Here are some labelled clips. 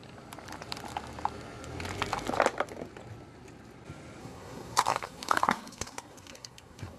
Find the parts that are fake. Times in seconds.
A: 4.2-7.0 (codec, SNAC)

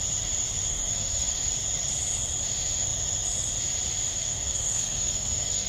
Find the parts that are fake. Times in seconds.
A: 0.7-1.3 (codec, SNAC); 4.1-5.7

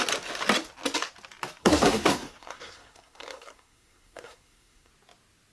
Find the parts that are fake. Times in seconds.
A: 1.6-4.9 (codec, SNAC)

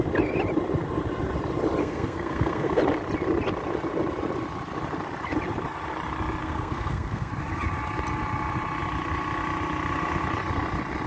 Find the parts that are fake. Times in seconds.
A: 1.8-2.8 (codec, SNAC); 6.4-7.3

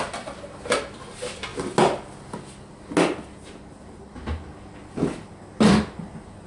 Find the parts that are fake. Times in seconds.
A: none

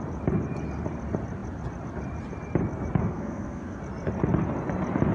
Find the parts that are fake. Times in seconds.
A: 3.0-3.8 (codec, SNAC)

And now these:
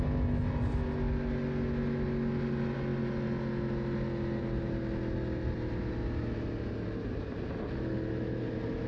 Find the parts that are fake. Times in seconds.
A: none